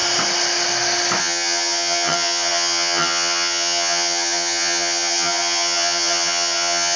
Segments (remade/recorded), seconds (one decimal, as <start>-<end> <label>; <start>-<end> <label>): 0.0-1.2 recorded; 1.2-7.0 remade